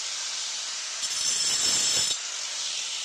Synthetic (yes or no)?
no